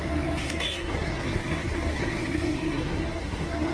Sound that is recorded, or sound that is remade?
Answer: remade